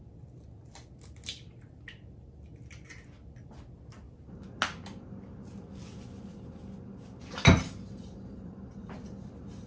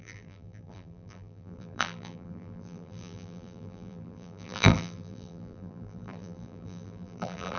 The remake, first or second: second